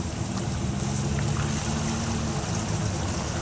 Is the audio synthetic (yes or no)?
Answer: no